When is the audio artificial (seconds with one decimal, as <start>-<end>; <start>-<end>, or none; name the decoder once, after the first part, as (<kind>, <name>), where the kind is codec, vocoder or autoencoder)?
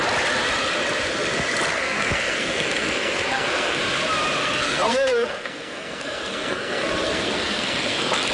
1.7-3.8 (codec, SNAC); 4.4-8.3